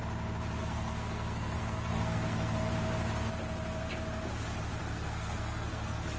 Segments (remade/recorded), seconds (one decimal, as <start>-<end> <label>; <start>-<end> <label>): 0.0-0.6 recorded; 0.6-2.7 remade; 2.7-4.8 recorded; 4.8-6.2 remade